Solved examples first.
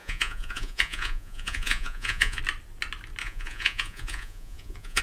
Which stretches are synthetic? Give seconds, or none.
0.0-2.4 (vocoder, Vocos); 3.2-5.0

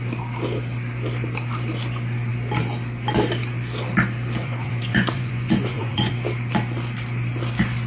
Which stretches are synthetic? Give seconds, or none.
4.4-6.1 (vocoder, Vocos)

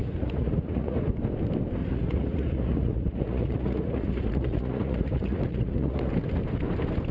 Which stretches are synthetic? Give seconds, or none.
0.0-1.1 (vocoder, Vocos); 1.8-6.1